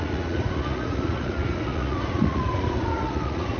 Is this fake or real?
fake